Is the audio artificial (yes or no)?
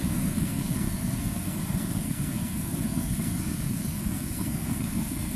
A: yes